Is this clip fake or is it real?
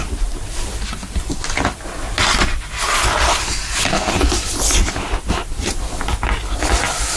real